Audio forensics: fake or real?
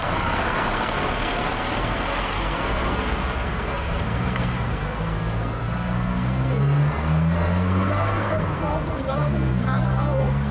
fake